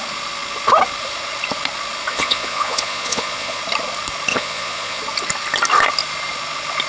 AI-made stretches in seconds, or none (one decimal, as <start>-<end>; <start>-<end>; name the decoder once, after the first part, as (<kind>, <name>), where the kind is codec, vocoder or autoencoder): 2.1-3.6 (vocoder, Vocos); 4.3-5.0